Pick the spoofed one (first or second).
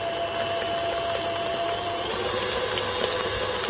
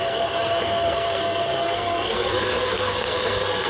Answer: second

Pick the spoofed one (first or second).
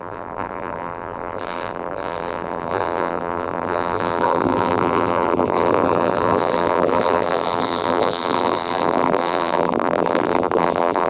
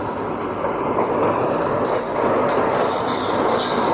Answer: first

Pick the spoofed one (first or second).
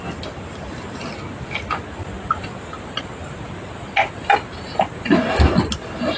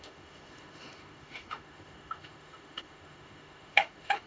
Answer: second